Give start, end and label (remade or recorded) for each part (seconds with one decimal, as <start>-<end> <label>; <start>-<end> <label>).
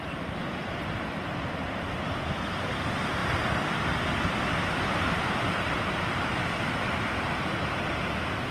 0.0-8.5 recorded